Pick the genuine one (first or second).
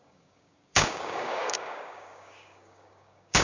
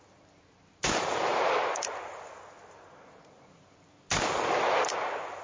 second